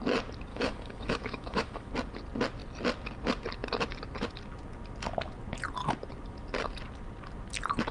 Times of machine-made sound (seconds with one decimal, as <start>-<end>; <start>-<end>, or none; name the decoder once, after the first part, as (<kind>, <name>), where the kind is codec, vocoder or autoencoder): 0.5-1.9 (autoencoder, DAC-VAE)